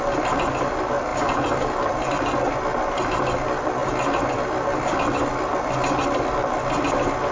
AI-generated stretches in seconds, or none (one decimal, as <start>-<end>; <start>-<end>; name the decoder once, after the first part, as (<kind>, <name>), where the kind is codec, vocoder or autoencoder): none